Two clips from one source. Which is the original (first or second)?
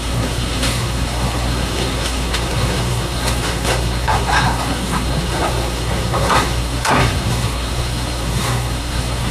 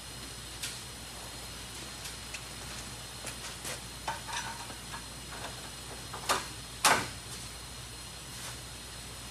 second